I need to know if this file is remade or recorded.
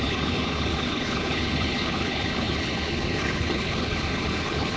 remade